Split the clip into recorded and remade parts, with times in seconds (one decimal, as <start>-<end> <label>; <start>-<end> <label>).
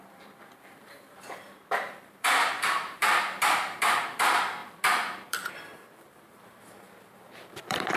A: 0.0-8.0 remade